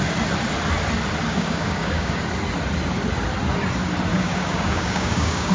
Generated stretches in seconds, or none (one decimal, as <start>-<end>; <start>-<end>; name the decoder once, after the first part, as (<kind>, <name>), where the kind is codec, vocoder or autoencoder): 1.3-2.2 (codec, DAC); 4.1-5.5